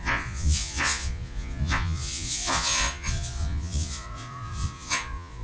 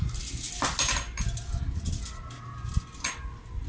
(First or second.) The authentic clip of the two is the second